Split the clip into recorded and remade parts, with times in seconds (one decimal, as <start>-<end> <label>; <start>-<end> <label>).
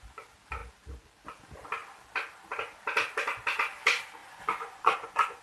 0.0-4.2 recorded; 4.2-5.4 remade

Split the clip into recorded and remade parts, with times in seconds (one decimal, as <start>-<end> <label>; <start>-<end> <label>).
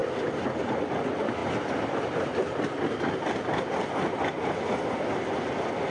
0.0-5.9 recorded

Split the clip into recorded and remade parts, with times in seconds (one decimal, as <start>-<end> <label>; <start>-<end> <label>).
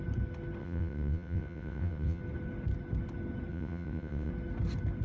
0.0-0.6 recorded; 0.6-2.2 remade; 2.2-3.5 recorded; 3.5-4.3 remade; 4.3-5.0 recorded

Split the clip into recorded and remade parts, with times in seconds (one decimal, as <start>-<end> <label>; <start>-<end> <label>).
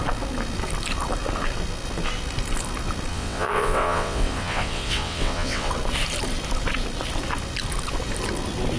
0.0-3.1 recorded; 3.1-5.7 remade; 5.7-8.8 recorded